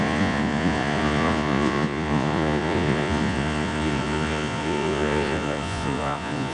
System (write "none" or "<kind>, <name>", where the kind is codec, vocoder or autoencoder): vocoder, Vocos